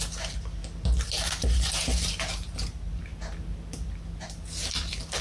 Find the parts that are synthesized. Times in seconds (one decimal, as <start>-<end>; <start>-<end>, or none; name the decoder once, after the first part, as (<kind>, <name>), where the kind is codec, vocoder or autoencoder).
none